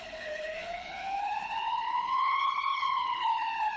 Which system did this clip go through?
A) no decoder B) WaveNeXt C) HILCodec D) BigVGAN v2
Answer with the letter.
C